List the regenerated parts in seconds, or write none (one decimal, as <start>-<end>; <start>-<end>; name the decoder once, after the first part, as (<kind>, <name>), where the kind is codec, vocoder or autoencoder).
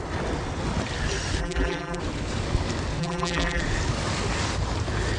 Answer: 1.4-2.0 (vocoder, BigVGAN v2); 3.0-3.6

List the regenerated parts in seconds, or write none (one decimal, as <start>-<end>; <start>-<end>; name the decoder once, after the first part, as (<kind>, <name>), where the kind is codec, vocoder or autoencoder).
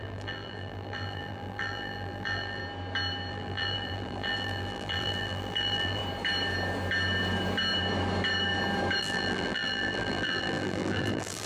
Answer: 0.0-2.6 (vocoder, BigVGAN v2); 3.3-6.0; 9.0-11.5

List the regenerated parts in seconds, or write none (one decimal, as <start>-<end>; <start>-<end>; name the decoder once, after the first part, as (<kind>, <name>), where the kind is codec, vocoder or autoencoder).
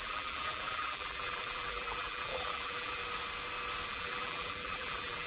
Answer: 0.0-3.0 (vocoder, BigVGAN v2); 3.9-5.3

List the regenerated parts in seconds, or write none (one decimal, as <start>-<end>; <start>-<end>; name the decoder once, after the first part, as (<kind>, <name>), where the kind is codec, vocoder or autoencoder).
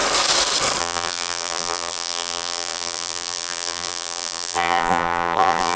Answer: 0.8-5.8 (vocoder, BigVGAN v2)